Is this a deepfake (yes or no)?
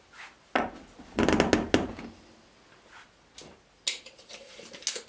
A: no